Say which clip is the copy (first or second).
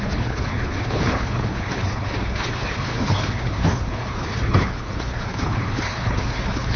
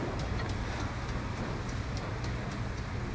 first